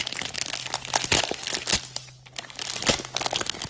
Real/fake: real